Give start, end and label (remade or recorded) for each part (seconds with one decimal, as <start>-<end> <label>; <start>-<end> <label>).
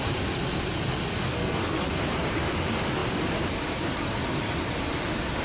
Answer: 0.0-1.3 recorded; 1.3-2.0 remade; 2.0-5.4 recorded